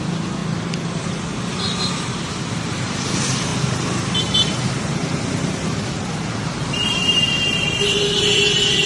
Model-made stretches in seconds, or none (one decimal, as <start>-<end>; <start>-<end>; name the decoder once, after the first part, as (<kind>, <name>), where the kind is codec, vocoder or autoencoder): 0.0-0.4 (vocoder, BigVGAN v2); 2.3-3.5; 4.2-8.9